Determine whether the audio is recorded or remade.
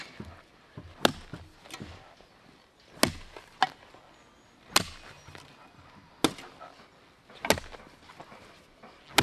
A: recorded